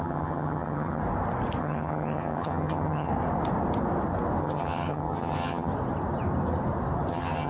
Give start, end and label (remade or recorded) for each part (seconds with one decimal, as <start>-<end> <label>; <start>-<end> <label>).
0.0-1.0 remade; 1.0-1.6 recorded; 1.6-3.1 remade; 3.1-4.4 recorded; 4.4-5.7 remade; 5.7-7.1 recorded; 7.1-7.5 remade